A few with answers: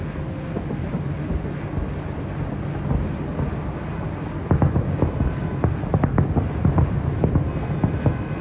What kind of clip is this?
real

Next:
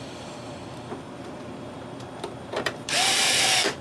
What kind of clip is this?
fake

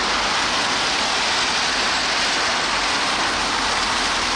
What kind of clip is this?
real